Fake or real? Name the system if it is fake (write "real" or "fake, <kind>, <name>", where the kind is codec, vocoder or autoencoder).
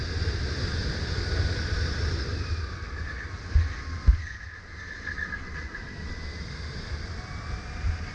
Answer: real